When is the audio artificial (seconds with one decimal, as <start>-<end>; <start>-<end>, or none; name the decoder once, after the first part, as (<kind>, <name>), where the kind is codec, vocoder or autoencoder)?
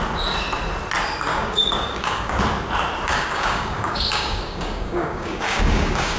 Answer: 1.3-2.4 (codec, DAC); 3.1-6.2